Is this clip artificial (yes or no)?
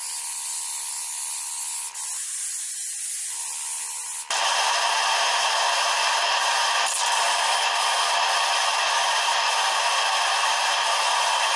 no